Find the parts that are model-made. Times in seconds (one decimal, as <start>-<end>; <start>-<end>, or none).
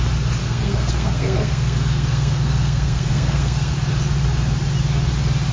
0.4-3.7